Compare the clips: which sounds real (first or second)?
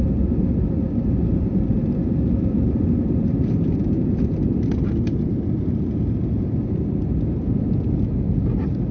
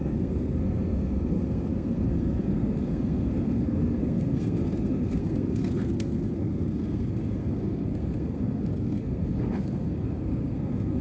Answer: first